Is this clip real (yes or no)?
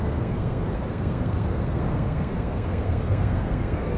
no